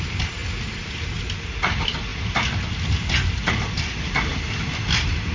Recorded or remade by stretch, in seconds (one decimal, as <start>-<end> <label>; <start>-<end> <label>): 0.0-5.3 recorded